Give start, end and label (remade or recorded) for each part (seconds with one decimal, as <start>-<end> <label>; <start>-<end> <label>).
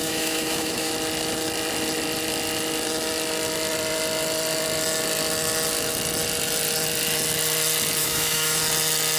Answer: 0.0-0.9 remade; 0.9-8.0 recorded; 8.0-8.6 remade; 8.6-9.2 recorded